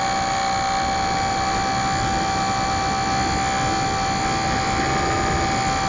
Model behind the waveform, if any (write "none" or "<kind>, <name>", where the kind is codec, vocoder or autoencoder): none